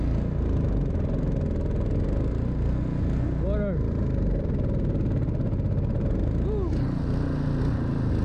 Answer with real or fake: real